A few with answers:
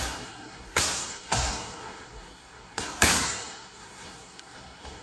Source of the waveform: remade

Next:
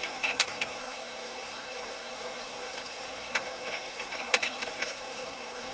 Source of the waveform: remade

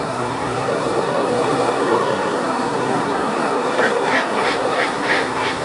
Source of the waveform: remade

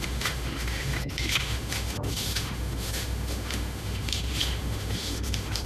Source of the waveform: remade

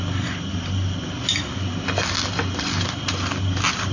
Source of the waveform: recorded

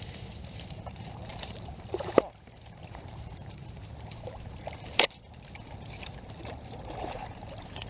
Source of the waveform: remade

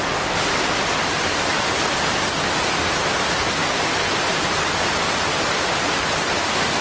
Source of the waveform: recorded